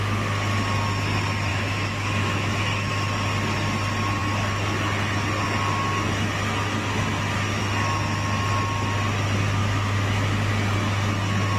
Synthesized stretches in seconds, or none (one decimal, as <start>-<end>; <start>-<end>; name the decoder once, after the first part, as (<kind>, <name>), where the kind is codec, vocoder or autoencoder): 1.5-2.9 (autoencoder, DAC-VAE); 9.6-10.5